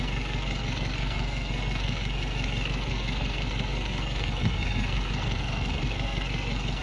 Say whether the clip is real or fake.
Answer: fake